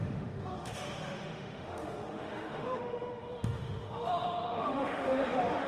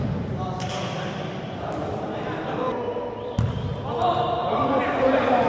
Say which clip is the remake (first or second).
first